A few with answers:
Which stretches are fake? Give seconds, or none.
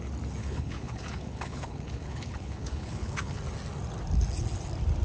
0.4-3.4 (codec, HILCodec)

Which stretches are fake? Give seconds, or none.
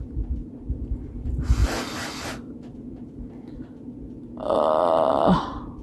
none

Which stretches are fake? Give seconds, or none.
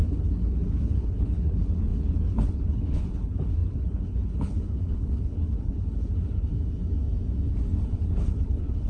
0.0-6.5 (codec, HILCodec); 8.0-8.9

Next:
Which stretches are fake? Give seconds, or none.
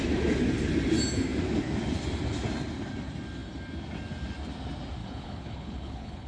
5.0-6.3 (codec, HILCodec)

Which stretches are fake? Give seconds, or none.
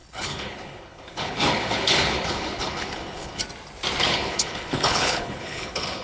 0.0-3.4 (codec, HILCodec); 4.0-6.0